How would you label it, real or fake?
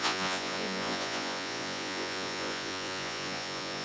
fake